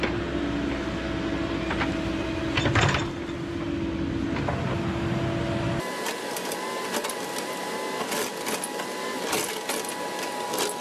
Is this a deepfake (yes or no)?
no